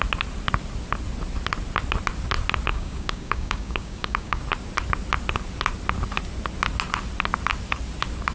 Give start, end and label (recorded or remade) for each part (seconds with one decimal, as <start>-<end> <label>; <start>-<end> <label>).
0.0-2.7 recorded; 2.7-4.4 remade; 4.4-8.3 recorded